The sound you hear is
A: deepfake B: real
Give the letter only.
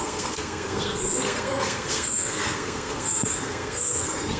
A